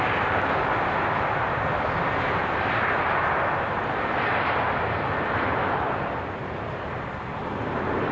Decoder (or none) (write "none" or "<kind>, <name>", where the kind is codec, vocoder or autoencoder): none